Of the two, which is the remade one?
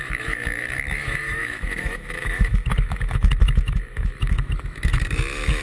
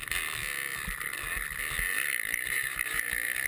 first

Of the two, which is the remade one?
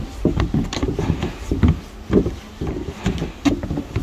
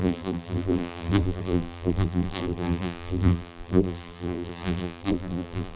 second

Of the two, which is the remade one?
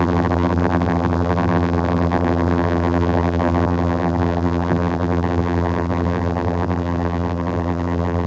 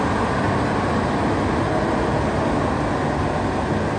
first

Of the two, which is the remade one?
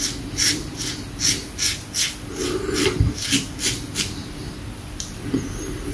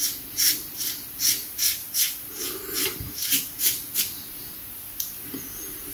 second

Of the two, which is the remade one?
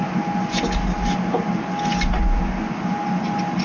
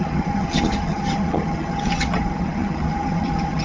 second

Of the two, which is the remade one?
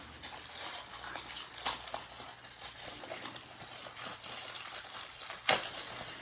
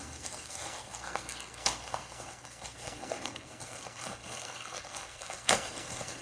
second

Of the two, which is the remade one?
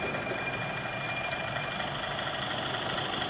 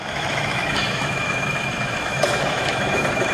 second